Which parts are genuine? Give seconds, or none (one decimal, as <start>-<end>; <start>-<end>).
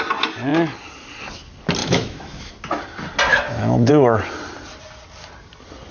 0.0-1.8; 2.5-3.3; 3.9-5.9